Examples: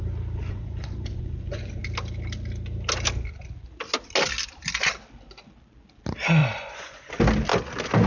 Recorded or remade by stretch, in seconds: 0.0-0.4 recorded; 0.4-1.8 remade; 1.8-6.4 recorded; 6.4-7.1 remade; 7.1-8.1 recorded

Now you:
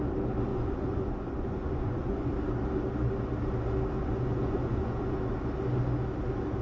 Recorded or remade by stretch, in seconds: 0.0-0.5 recorded; 0.5-2.3 remade; 2.3-4.0 recorded; 4.0-5.2 remade; 5.2-6.6 recorded

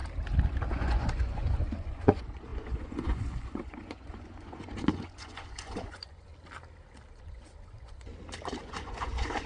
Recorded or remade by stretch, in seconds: 0.0-0.7 recorded; 0.7-6.3 remade; 6.3-7.1 recorded; 7.1-8.1 remade; 8.1-8.6 recorded; 8.6-9.5 remade

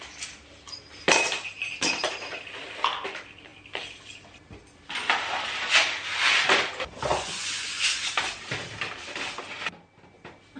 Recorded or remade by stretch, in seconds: 0.0-7.1 recorded; 7.1-8.1 remade; 8.1-10.6 recorded

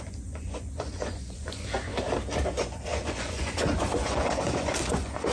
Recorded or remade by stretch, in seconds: 0.0-1.9 remade; 1.9-2.5 recorded; 2.5-5.3 remade

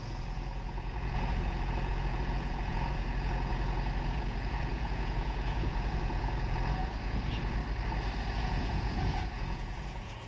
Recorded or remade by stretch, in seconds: 0.0-7.6 remade; 7.6-8.4 recorded; 8.4-10.3 remade

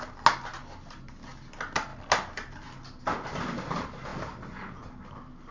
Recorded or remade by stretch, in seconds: 0.0-5.5 recorded

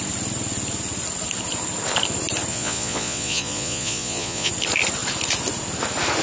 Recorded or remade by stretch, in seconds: 0.0-2.5 recorded; 2.5-4.5 remade; 4.5-6.2 recorded